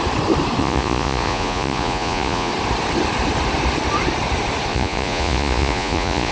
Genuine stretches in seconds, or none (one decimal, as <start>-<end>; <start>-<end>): 0.0-0.6; 2.5-4.7